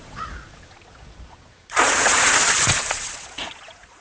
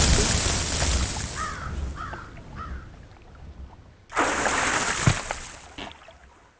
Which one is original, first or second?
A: second